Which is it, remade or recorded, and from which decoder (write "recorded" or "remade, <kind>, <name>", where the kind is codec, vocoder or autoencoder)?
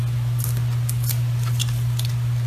recorded